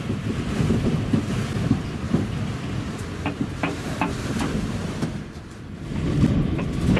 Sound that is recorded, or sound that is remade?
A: remade